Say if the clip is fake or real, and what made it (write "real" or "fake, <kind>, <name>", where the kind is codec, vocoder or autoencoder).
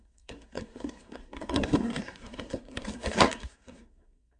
fake, codec, SNAC